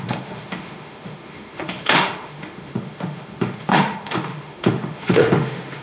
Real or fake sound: fake